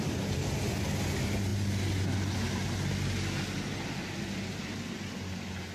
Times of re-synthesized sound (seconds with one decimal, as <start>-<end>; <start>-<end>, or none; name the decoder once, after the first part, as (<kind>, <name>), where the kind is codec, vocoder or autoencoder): none